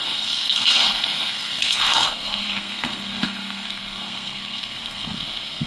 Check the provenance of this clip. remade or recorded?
remade